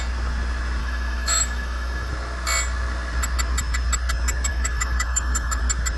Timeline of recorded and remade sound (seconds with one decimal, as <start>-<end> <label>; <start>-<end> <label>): 0.0-0.8 recorded; 0.8-2.1 remade; 2.1-4.5 recorded; 4.5-5.6 remade; 5.6-6.0 recorded